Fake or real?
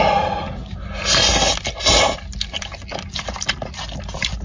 real